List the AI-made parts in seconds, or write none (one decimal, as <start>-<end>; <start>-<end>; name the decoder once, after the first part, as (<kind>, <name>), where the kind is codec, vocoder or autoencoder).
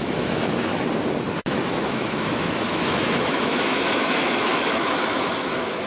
0.0-0.7 (autoencoder, DAC-VAE); 1.4-5.9